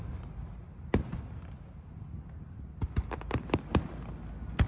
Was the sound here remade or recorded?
recorded